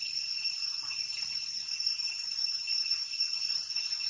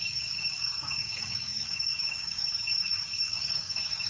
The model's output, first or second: second